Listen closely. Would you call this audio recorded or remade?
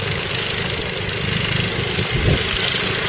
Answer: recorded